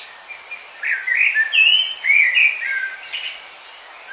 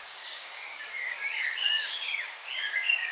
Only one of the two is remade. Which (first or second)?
second